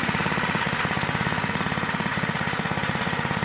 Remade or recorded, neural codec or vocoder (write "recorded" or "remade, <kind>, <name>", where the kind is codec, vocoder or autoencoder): remade, vocoder, Vocos